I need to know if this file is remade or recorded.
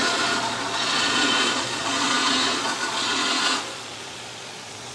remade